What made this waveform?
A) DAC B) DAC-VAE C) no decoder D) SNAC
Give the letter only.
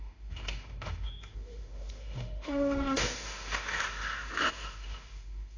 B